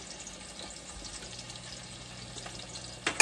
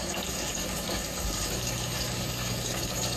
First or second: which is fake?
second